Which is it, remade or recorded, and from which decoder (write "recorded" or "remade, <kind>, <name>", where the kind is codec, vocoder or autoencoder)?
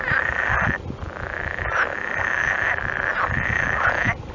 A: recorded